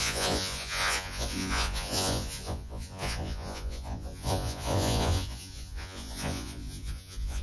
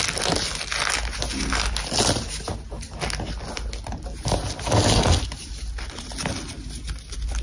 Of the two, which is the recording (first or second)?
second